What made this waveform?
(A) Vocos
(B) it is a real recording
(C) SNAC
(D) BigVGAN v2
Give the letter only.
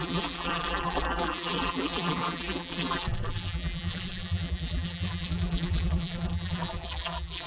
D